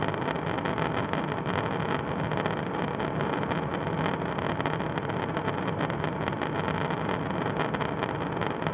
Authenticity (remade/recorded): recorded